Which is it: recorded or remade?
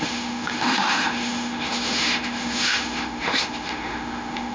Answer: remade